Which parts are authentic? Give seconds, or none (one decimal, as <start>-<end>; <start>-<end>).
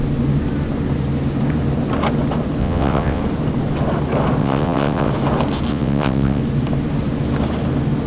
0.0-2.6; 3.2-4.4; 5.1-5.7; 6.4-8.1